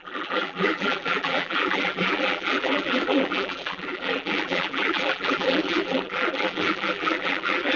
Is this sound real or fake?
fake